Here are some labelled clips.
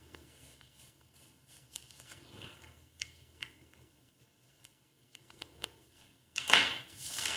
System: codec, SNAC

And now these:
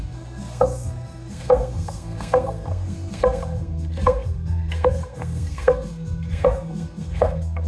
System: codec, SNAC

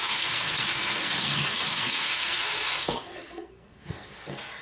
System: codec, SNAC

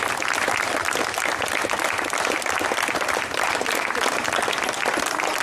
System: none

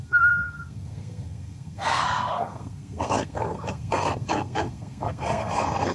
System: codec, SNAC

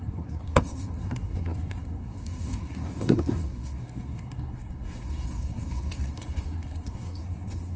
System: codec, SNAC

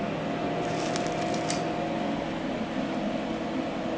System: none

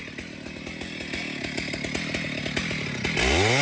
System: none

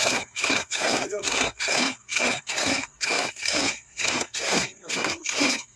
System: codec, SNAC